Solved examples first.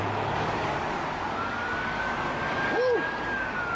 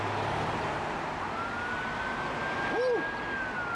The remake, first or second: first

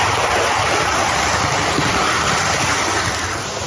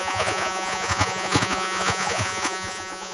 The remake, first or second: second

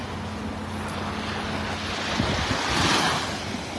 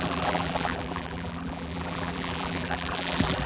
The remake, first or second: second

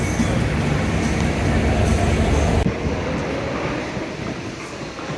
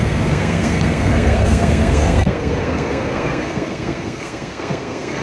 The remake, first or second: second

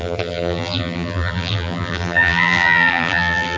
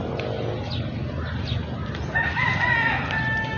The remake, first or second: first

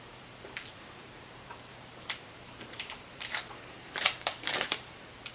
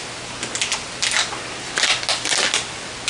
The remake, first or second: first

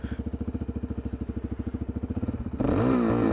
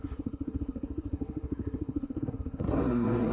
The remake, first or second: second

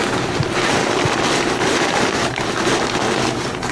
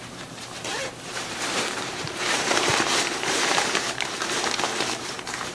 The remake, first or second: second